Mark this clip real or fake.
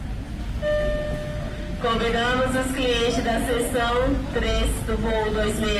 real